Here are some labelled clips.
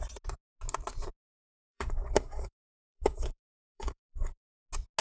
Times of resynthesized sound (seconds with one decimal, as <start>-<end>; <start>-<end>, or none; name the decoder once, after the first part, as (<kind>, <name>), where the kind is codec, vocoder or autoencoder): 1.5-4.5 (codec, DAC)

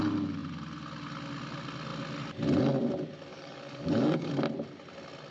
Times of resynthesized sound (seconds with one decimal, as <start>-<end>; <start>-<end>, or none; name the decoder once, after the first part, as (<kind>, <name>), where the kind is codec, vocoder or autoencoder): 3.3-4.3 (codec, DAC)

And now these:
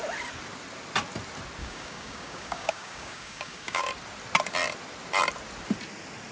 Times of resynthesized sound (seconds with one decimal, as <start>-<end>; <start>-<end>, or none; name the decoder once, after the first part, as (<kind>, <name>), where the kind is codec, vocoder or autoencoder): 1.6-3.8 (codec, DAC)

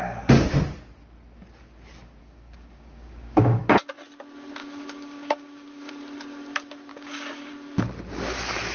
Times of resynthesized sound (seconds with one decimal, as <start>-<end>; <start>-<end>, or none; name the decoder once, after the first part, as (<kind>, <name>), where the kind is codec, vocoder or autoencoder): 2.2-3.6 (codec, DAC); 4.6-5.9; 6.9-7.5

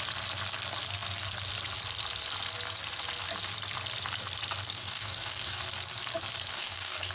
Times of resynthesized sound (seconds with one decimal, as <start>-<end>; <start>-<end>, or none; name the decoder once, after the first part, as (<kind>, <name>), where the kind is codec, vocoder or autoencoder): 4.7-5.6 (codec, DAC); 6.5-7.1

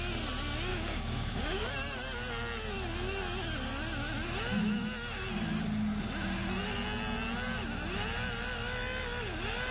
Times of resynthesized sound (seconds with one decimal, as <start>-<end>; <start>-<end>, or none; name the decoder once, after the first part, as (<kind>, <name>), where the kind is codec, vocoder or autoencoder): 0.7-1.7 (codec, DAC)

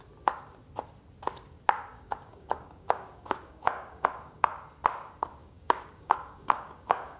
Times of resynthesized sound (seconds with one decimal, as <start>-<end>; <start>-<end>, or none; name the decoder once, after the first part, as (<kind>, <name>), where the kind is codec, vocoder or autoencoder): 1.9-4.5 (codec, DAC); 5.4-7.2